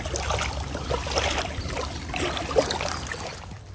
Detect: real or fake real